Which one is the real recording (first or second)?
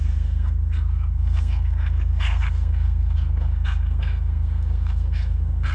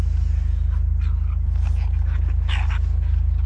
second